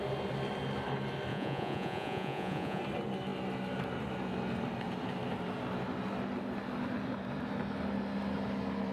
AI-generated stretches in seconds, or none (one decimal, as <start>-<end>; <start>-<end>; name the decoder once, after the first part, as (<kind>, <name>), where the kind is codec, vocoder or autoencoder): 1.3-2.8 (vocoder, Vocos)